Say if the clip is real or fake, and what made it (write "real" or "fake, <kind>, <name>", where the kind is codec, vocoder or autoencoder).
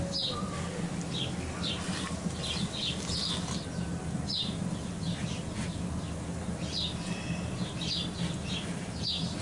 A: real